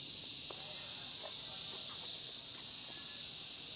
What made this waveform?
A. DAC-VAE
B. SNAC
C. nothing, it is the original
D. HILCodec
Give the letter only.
C